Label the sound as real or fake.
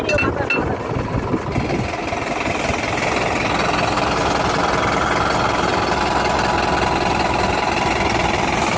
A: real